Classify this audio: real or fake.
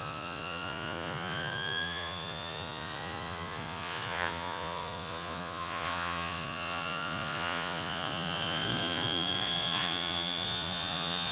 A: fake